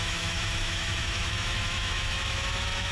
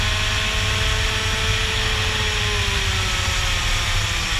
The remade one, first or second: first